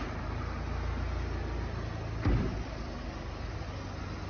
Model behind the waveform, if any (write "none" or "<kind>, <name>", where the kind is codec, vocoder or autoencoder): none